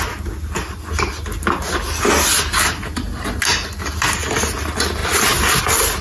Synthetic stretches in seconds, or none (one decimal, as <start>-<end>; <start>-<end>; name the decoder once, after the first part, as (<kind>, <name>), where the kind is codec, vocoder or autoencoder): none